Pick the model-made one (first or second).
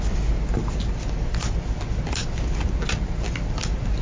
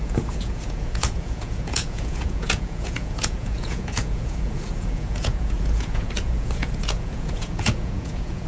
second